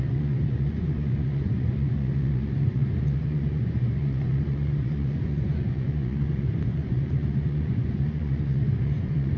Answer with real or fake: fake